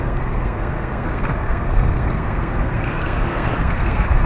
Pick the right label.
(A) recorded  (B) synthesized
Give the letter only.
B